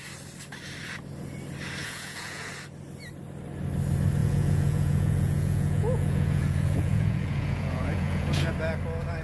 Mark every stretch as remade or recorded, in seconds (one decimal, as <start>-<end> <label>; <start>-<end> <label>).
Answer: 0.0-1.8 recorded; 1.8-2.5 remade; 2.5-4.2 recorded; 4.2-8.5 remade; 8.5-9.2 recorded